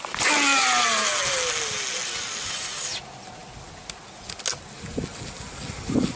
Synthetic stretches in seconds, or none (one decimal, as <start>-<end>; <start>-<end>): none